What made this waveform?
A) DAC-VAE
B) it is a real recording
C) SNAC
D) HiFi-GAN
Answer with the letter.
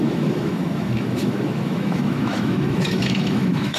A